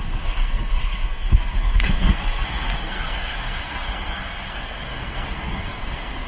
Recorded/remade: remade